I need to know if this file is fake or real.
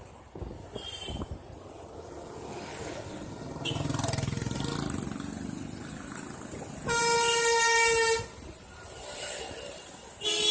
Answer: real